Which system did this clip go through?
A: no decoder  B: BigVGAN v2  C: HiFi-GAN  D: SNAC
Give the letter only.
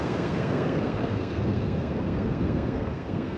D